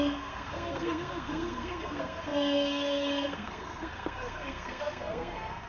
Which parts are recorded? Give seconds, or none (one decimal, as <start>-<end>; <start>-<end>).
none